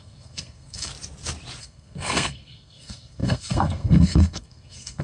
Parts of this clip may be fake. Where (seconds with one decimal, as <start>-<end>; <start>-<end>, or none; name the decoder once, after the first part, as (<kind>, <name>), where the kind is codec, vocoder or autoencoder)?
0.0-0.9 (codec, SNAC); 1.6-5.0